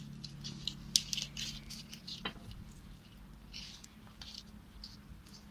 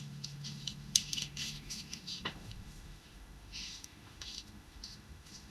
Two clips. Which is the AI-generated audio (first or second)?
second